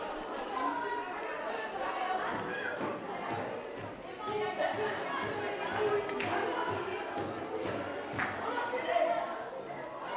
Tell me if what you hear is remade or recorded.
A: recorded